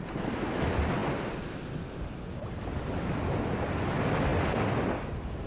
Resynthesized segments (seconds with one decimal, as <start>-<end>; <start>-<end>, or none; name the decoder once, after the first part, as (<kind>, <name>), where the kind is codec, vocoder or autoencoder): none